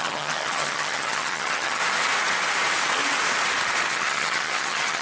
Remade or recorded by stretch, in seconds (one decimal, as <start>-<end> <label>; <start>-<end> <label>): 0.0-1.8 remade; 1.8-3.9 recorded; 3.9-5.0 remade